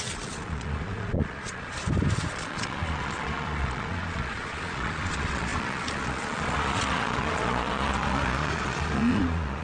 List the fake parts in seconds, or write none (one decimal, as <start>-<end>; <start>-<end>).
0.0-1.7; 2.3-9.6